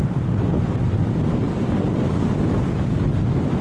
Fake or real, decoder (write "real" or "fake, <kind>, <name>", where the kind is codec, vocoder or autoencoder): real